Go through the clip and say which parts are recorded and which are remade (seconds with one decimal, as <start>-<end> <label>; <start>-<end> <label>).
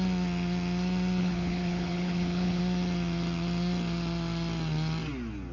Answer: 0.0-1.2 recorded; 1.2-2.6 remade; 2.6-5.5 recorded